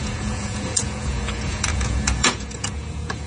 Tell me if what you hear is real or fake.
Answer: fake